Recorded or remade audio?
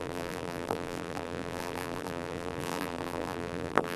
remade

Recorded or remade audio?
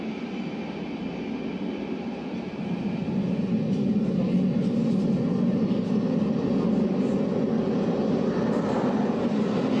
recorded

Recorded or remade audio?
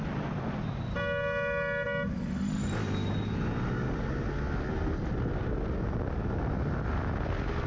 recorded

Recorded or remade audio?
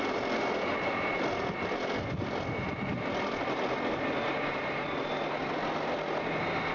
recorded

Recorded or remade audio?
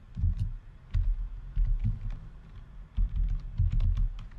recorded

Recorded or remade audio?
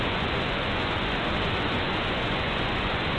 remade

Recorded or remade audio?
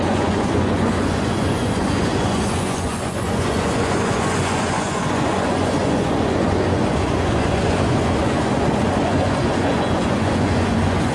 remade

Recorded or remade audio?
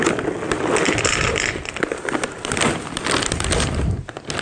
recorded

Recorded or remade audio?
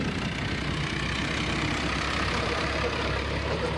remade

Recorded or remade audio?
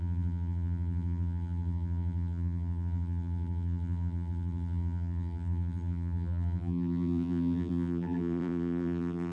remade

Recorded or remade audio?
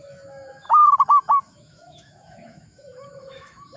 remade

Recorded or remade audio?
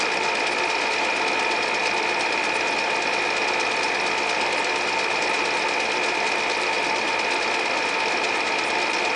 recorded